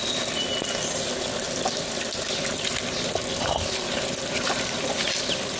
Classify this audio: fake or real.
real